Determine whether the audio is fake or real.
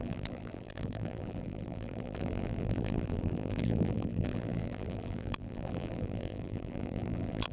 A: fake